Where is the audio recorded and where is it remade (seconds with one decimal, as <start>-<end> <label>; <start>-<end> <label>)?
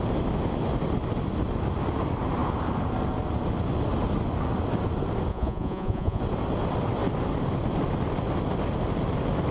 0.0-5.3 recorded; 5.3-6.2 remade; 6.2-9.5 recorded